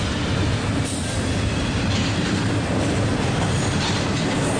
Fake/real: real